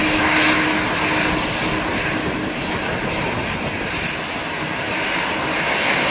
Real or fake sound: real